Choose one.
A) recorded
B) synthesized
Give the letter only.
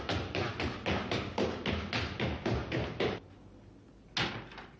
A